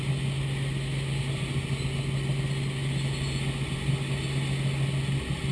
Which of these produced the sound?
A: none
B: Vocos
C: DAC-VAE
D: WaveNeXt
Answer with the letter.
A